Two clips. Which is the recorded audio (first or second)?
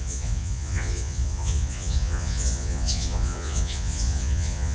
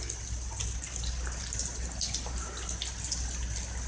second